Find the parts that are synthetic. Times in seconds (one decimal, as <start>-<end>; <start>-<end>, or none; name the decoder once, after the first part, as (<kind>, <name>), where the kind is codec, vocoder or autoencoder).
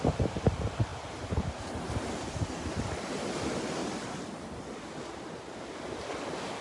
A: none